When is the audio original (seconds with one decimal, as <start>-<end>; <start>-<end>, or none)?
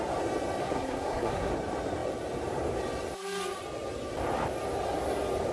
0.0-0.6; 1.5-5.5